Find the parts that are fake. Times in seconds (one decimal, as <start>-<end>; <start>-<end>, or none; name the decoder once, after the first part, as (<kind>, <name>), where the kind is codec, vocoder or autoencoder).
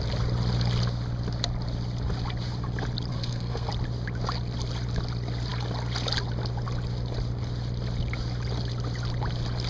3.1-3.7 (codec, SNAC)